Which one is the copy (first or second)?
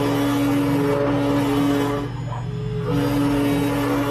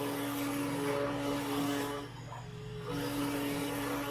second